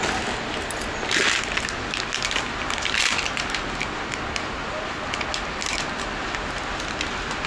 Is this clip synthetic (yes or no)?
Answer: no